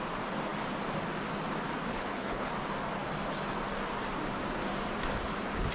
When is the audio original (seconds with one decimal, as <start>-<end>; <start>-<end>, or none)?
0.0-1.9; 2.5-5.7